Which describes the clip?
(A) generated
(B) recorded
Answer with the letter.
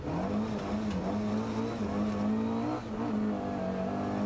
B